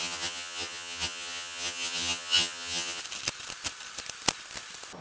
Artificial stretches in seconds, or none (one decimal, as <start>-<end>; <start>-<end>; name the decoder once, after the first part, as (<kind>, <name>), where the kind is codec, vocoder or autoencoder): 0.0-3.0 (vocoder, HiFi-GAN)